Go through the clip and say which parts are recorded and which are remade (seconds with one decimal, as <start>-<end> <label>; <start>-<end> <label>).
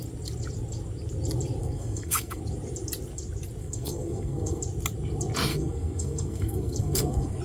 0.0-1.6 recorded; 1.6-2.4 remade; 2.4-3.6 recorded; 3.6-4.6 remade; 4.6-5.5 recorded; 5.5-7.4 remade